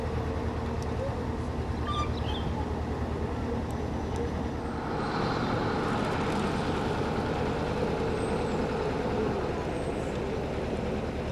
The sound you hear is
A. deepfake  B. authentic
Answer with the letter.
B